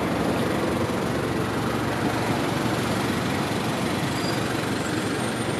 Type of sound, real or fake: fake